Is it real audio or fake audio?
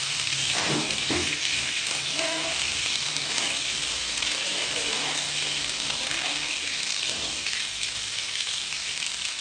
fake